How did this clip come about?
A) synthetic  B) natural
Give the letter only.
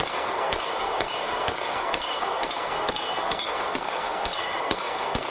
A